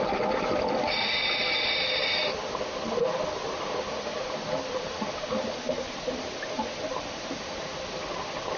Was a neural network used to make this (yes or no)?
no